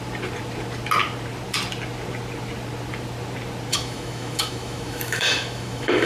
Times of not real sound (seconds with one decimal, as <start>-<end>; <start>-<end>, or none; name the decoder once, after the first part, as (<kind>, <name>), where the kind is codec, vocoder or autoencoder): 3.7-6.1 (autoencoder, DAC-VAE)